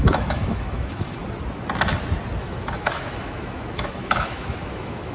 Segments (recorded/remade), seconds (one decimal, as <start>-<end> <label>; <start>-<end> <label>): 0.0-1.2 remade; 1.2-2.4 recorded; 2.4-5.1 remade